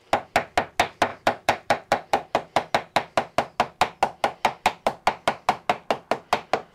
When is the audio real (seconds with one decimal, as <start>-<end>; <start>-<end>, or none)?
0.0-1.1; 2.7-6.7